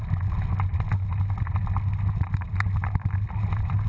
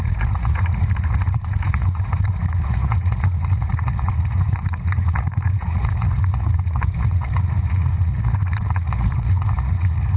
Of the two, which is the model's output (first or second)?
second